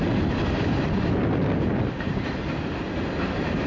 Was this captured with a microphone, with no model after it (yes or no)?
yes